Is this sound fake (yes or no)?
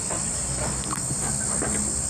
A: no